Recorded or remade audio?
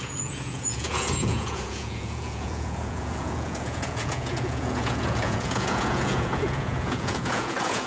remade